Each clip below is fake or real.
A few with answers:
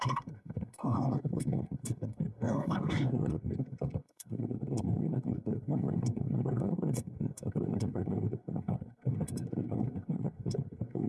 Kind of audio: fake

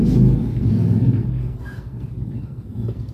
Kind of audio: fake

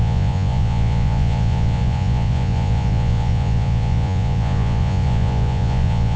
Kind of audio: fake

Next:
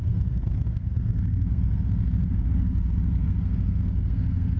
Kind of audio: fake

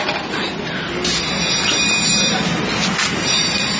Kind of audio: real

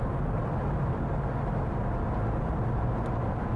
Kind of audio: real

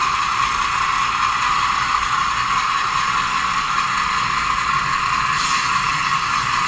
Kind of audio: real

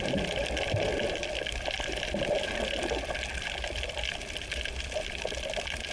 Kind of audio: fake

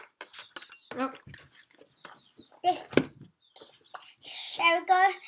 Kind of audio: real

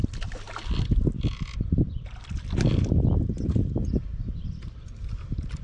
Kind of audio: real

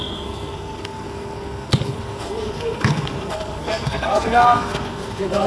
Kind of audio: fake